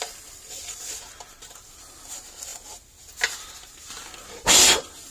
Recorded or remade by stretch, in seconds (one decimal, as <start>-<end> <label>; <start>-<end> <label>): 0.0-5.1 recorded